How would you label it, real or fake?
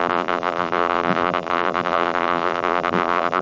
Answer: fake